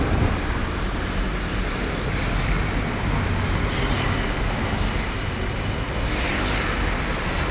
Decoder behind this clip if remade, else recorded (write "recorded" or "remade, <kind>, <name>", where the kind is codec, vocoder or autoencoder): recorded